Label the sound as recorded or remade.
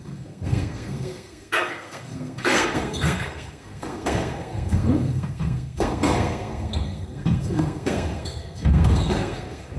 remade